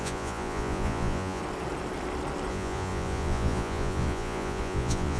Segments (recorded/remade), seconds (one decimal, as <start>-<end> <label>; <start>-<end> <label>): 0.0-1.4 remade; 1.4-2.5 recorded; 2.5-5.2 remade